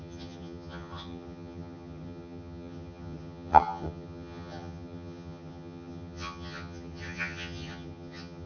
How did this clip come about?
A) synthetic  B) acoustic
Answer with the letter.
A